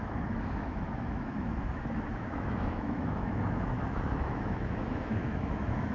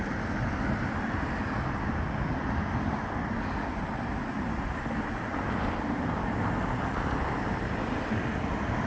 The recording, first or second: second